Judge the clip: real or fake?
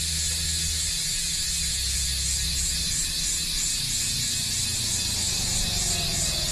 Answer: real